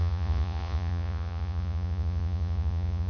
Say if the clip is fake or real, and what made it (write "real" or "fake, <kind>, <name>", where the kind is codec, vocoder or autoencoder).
fake, vocoder, Vocos